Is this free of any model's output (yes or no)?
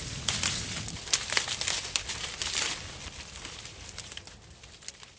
yes